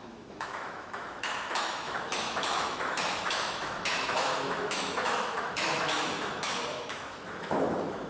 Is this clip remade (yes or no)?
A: yes